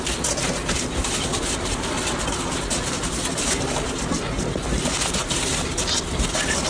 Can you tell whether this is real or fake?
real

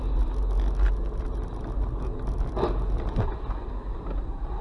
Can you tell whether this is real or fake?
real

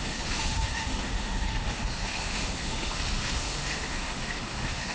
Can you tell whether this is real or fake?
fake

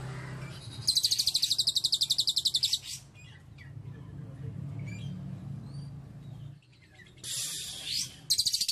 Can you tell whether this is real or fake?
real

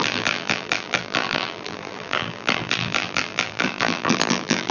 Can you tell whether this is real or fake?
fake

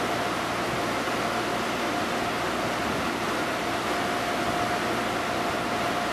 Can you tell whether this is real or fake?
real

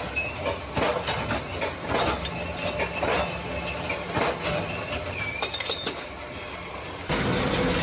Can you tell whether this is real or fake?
real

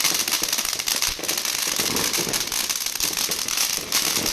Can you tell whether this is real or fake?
real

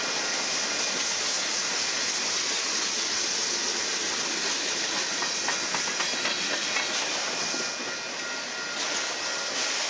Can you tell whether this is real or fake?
real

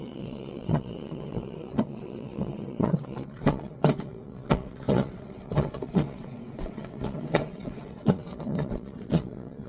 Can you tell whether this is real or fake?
fake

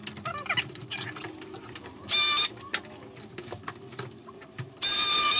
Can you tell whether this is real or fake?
real